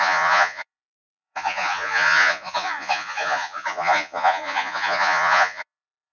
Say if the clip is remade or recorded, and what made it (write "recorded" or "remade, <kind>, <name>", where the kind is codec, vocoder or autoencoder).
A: remade, vocoder, Vocos